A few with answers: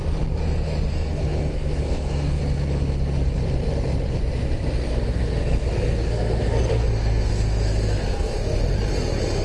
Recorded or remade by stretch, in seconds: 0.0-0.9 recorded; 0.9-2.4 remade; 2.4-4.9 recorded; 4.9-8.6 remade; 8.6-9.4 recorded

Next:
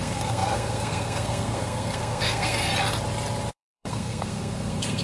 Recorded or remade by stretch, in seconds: 0.0-2.7 remade; 2.7-3.5 recorded; 3.5-5.0 remade

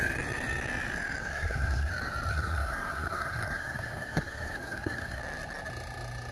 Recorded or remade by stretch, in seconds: 0.0-1.2 recorded; 1.2-1.9 remade; 1.9-2.3 recorded; 2.3-5.2 remade; 5.2-6.3 recorded

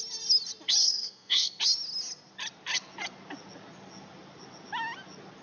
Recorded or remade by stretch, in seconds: 0.0-0.8 recorded; 0.8-1.6 remade; 1.6-5.4 recorded

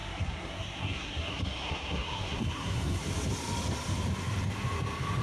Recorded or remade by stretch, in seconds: 0.0-3.0 remade; 3.0-5.2 recorded